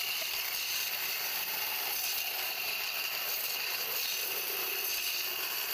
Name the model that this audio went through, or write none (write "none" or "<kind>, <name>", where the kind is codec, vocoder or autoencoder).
vocoder, BigVGAN v2